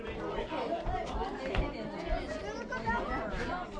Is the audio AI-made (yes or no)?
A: no